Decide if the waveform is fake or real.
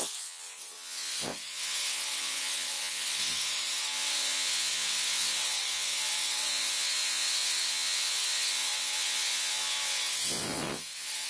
fake